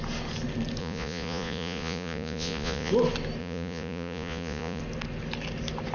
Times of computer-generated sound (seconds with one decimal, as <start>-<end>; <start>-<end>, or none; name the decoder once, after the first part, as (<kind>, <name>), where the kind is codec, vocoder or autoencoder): 0.8-2.9 (vocoder, Vocos); 3.4-4.8